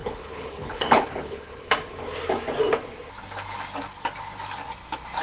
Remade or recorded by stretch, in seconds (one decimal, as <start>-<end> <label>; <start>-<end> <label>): 0.0-1.7 remade; 1.7-5.2 recorded